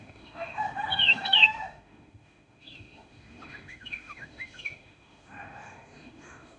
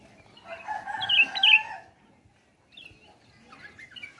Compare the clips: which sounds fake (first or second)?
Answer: first